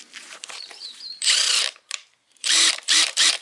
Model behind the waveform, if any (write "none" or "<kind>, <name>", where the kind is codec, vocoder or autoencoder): vocoder, BigVGAN v2